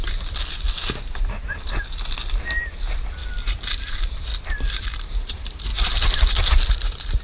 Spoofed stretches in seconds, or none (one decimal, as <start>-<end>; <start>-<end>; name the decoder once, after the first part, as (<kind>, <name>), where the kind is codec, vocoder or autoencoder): 0.0-0.4 (vocoder, BigVGAN v2); 2.6-3.2; 3.9-4.3; 4.8-7.2